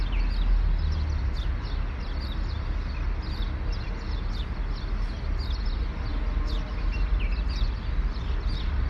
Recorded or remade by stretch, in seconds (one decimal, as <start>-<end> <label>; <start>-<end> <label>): 0.0-8.9 recorded